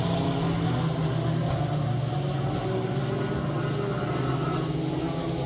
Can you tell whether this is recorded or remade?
recorded